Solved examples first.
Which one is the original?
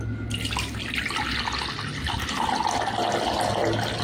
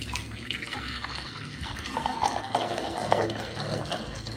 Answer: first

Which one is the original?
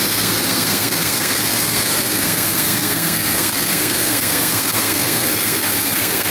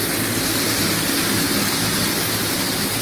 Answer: second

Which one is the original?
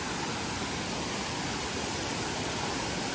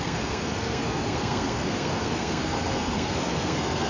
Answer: first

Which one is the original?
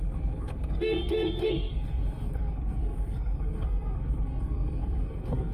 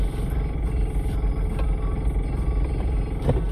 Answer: second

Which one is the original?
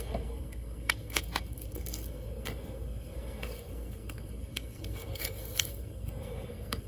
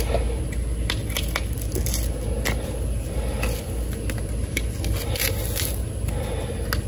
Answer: second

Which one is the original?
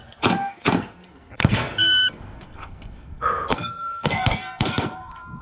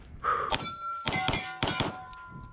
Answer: second